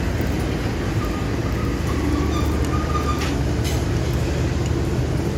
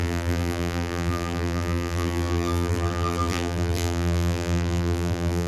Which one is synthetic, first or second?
second